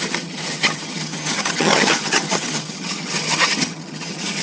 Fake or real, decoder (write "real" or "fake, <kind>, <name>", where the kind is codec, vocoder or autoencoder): fake, vocoder, HiFi-GAN